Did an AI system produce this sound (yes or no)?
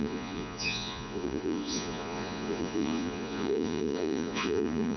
yes